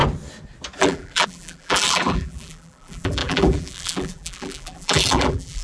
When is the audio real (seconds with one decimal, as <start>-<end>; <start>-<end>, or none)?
0.0-0.8